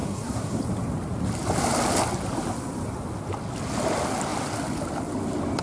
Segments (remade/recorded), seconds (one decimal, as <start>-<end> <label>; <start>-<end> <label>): 0.0-0.6 remade; 0.6-5.6 recorded